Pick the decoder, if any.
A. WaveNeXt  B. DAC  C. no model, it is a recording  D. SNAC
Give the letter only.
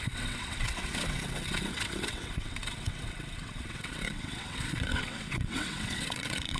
A